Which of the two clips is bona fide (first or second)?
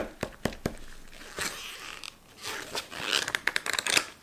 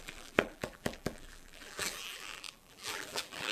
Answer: first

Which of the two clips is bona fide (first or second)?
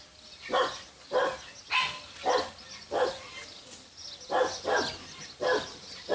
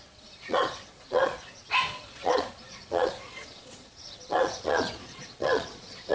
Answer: first